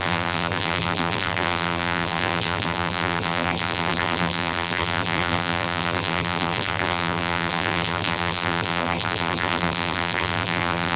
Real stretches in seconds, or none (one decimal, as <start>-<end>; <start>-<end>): none